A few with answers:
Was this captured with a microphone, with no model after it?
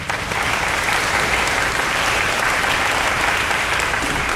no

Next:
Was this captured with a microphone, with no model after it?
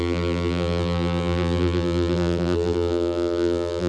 no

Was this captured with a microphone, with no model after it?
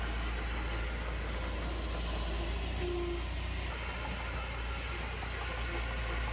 yes